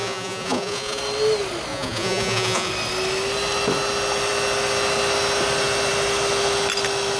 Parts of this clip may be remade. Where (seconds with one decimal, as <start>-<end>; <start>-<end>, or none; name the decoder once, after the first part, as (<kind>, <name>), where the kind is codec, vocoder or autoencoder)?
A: 0.0-1.0 (vocoder, Vocos); 1.7-2.7